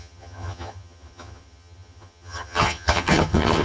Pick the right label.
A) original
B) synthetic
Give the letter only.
B